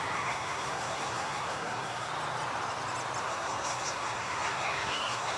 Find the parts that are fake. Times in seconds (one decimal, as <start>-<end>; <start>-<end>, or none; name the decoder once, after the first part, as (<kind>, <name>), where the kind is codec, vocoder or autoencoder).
0.0-2.1 (codec, SNAC); 3.2-5.4